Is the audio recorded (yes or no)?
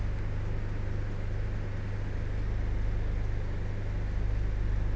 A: yes